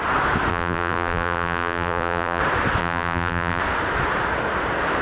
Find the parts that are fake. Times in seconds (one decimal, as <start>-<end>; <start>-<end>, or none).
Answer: 0.5-2.4; 2.8-3.6